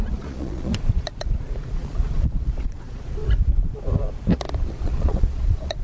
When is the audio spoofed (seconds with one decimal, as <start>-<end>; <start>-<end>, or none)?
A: 0.0-3.2; 4.7-5.8